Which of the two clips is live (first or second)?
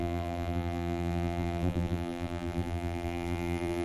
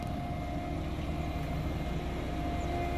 second